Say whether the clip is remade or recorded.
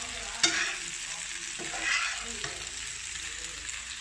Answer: recorded